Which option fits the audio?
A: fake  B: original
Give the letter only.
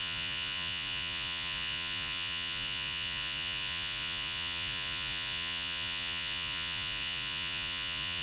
A